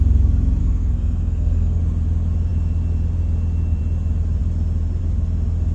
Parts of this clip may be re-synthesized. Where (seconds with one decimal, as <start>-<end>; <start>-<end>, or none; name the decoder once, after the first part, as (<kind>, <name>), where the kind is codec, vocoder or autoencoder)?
0.6-1.8 (codec, SNAC)